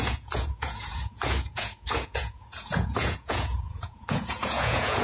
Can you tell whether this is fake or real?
fake